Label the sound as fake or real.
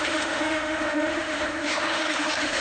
fake